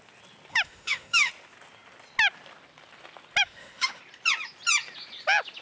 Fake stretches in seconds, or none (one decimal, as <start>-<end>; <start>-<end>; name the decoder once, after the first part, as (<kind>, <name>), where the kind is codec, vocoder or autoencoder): 0.5-1.3 (autoencoder, DAC-VAE); 3.4-4.0